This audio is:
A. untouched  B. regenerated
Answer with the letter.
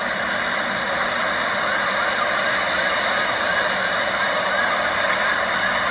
A